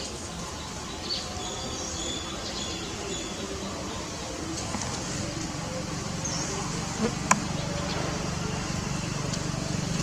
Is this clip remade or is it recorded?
recorded